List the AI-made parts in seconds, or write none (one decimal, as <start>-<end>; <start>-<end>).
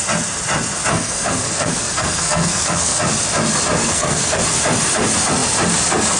0.9-3.0; 3.8-4.4